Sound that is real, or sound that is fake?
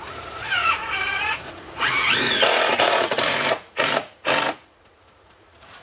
fake